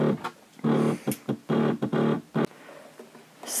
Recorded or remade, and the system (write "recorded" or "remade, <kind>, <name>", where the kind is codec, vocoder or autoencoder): recorded